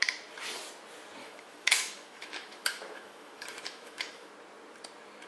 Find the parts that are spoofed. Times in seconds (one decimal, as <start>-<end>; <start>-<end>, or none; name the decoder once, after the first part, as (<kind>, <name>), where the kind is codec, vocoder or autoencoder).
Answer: 1.2-4.3 (autoencoder, DAC-VAE)